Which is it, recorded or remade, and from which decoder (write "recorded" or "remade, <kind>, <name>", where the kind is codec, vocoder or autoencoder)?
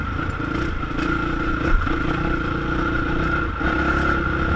recorded